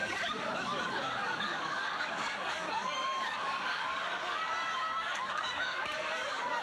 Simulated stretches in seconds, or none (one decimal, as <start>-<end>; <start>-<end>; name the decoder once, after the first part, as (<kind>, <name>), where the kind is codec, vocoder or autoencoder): 0.0-6.6 (codec, DAC)